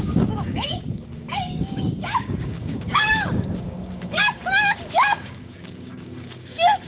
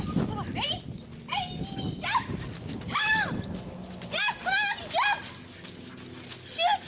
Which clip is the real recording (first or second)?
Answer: second